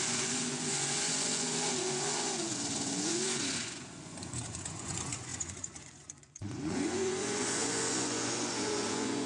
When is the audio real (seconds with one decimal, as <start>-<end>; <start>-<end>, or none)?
none